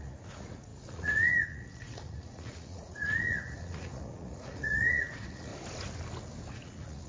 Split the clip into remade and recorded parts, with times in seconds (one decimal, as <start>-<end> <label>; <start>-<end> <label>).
0.0-5.5 remade; 5.5-6.5 recorded; 6.5-7.1 remade